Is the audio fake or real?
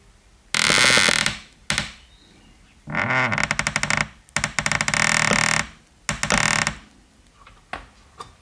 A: real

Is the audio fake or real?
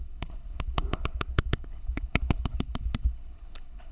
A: fake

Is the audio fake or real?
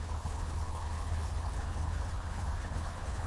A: fake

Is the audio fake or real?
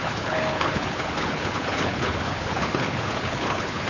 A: fake